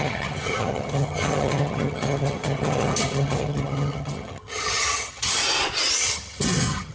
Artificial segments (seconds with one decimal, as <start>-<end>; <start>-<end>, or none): 0.0-5.4; 6.0-6.9